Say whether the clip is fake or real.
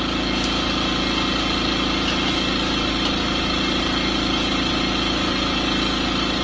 real